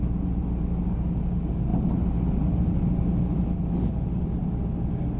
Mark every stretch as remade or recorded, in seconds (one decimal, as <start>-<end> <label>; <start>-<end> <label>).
0.0-5.2 recorded